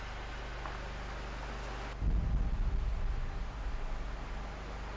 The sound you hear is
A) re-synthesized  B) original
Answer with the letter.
B